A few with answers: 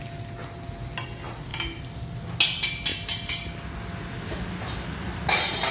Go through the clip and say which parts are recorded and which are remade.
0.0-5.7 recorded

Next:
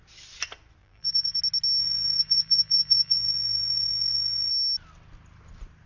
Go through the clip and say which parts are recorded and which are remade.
0.0-0.8 recorded; 0.8-1.4 remade; 1.4-1.8 recorded; 1.8-4.5 remade; 4.5-5.9 recorded

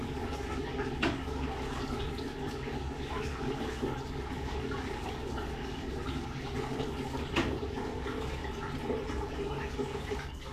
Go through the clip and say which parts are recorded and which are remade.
0.0-8.4 remade; 8.4-9.2 recorded; 9.2-10.5 remade

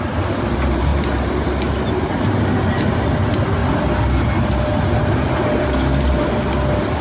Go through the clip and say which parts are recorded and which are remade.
0.0-7.0 recorded

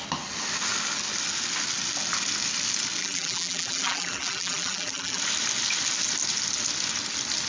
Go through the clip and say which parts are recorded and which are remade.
0.0-3.0 recorded; 3.0-5.2 remade; 5.2-7.5 recorded